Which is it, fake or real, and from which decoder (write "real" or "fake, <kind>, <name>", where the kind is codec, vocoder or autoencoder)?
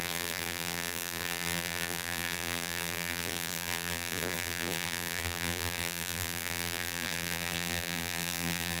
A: fake, vocoder, BigVGAN v2